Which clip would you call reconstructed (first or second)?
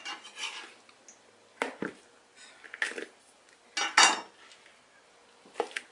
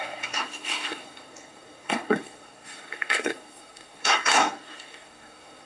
second